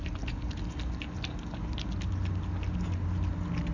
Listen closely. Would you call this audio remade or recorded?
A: recorded